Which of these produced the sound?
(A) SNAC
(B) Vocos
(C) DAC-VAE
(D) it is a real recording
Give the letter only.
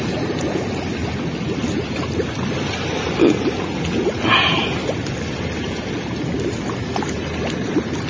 D